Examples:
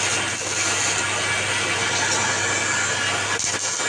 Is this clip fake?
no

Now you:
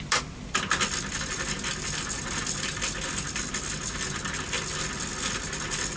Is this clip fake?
no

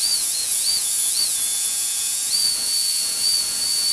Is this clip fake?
yes